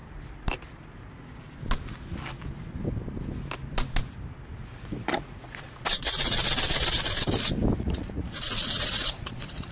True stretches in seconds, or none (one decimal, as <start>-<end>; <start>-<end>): 0.0-4.6; 6.4-7.8